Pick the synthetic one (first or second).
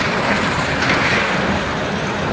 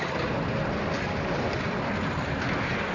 first